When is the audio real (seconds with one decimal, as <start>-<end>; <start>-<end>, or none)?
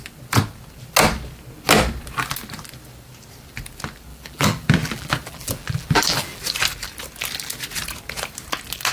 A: 0.0-4.1; 6.4-8.9